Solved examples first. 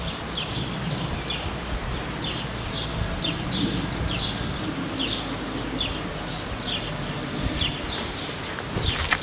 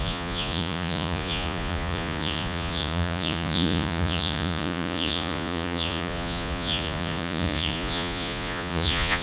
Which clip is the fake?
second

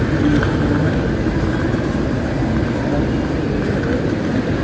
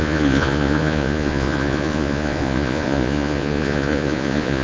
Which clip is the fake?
second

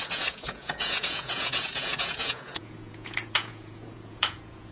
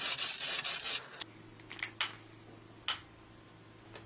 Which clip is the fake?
first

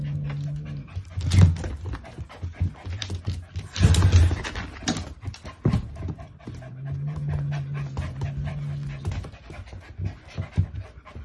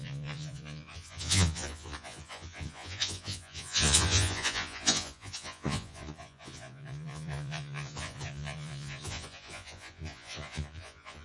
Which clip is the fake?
second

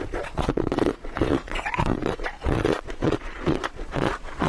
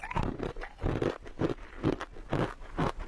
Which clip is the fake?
first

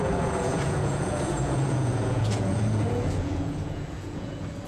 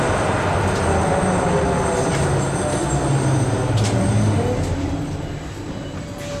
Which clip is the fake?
first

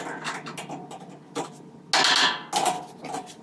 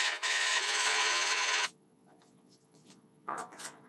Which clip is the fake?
second